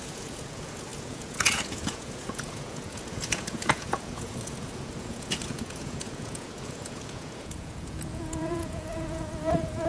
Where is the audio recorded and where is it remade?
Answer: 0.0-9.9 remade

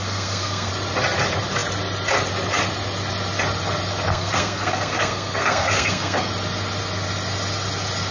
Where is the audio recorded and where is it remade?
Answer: 0.0-0.7 remade; 0.7-4.1 recorded; 4.1-6.3 remade; 6.3-8.1 recorded

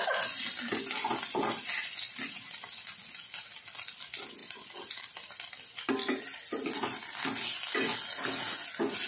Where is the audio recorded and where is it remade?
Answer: 0.0-9.1 recorded

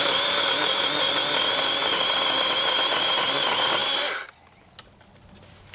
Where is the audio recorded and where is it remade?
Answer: 0.0-5.7 recorded

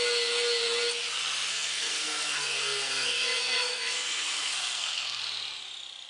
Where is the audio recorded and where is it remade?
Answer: 0.0-1.5 recorded; 1.5-5.2 remade; 5.2-6.1 recorded

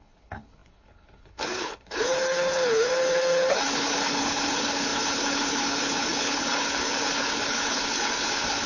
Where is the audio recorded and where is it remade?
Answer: 0.0-8.7 remade